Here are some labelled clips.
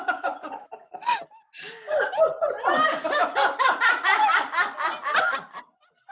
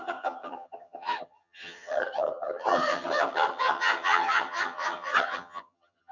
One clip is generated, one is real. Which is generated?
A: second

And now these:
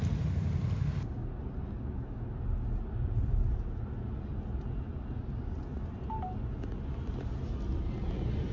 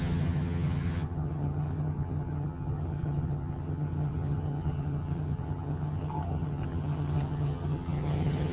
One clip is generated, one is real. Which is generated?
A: second